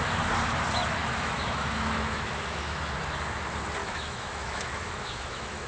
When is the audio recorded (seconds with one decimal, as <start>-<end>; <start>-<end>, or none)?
0.0-1.0; 2.8-3.8